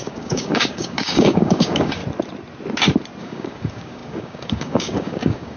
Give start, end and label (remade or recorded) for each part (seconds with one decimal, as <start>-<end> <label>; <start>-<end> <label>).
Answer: 0.0-2.0 remade; 2.0-3.2 recorded; 3.2-5.6 remade